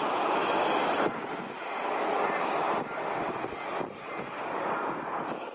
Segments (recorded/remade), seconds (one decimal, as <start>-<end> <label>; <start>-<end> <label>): 0.0-5.5 recorded